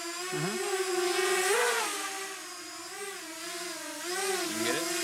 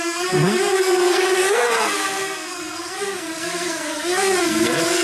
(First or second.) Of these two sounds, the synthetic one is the second